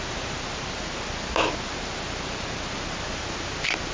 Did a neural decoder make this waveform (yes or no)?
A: no